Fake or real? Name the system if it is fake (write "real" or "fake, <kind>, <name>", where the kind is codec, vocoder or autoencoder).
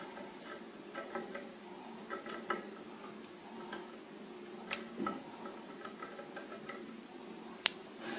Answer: real